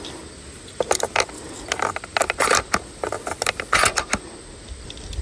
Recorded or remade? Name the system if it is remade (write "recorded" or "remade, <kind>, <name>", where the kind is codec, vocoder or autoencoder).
recorded